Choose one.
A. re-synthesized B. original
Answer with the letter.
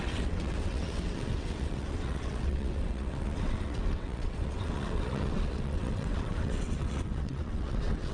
A